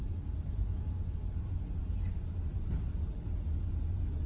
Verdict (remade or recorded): recorded